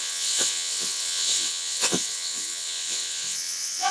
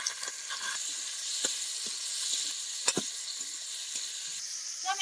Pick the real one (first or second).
second